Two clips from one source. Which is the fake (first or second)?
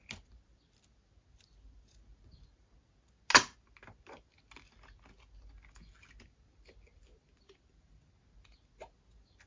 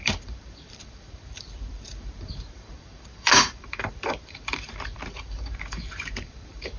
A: second